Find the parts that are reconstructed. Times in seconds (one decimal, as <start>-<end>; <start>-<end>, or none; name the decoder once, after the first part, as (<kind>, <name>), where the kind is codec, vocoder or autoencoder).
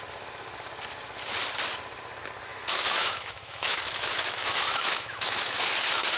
2.5-5.7 (autoencoder, DAC-VAE)